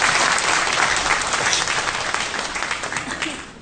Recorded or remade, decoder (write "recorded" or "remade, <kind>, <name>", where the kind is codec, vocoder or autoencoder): recorded